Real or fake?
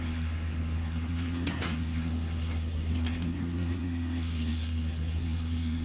fake